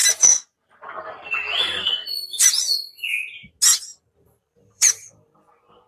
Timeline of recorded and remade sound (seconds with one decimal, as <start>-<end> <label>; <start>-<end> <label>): 0.0-3.9 recorded; 3.9-5.5 remade; 5.5-5.9 recorded